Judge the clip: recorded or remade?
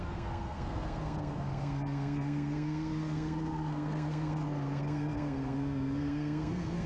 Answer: remade